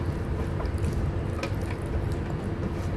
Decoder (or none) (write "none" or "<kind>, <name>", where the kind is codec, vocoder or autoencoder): none